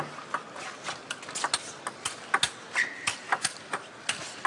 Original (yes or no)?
yes